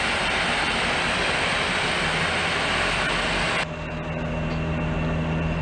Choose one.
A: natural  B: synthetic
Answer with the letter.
A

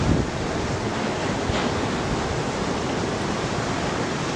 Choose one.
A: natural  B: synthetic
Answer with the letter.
B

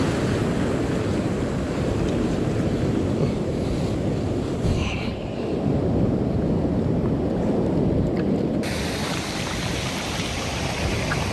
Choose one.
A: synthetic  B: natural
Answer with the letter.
B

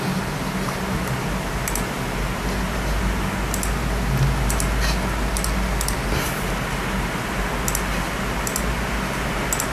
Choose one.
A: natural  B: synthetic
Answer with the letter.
A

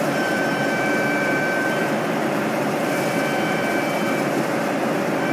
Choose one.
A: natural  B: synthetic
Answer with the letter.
B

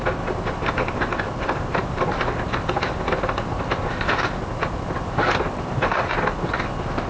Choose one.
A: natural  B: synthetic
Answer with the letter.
B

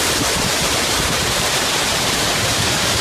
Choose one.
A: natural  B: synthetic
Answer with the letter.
B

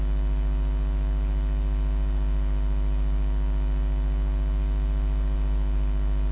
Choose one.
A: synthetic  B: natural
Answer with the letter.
B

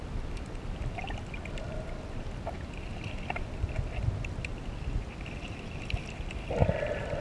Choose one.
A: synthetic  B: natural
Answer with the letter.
B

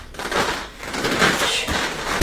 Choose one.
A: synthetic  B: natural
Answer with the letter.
A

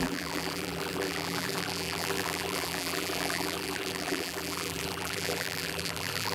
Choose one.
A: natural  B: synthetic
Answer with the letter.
B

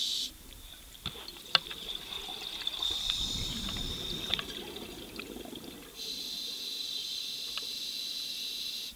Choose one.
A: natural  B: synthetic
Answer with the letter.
A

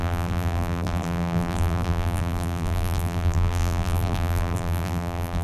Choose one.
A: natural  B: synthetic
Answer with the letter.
B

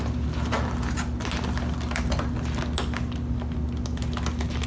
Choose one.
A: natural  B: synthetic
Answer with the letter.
A